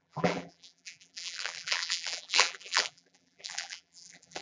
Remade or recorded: remade